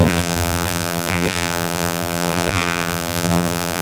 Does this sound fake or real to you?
fake